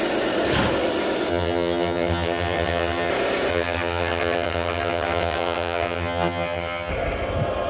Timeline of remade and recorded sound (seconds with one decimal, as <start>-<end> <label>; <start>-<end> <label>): 0.0-1.3 recorded; 1.3-3.1 remade; 3.1-3.5 recorded; 3.5-6.9 remade; 6.9-7.7 recorded